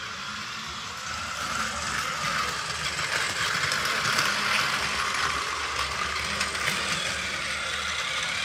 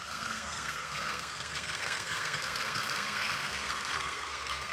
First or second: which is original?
first